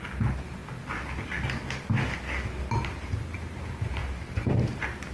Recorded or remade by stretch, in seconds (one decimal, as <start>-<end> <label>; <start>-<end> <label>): 0.0-5.1 recorded